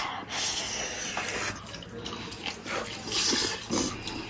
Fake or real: real